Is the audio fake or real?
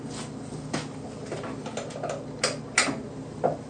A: real